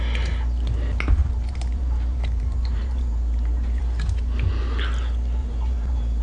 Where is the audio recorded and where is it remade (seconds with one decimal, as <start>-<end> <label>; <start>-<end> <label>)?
0.0-1.2 recorded; 1.2-3.8 remade; 3.8-5.4 recorded; 5.4-6.2 remade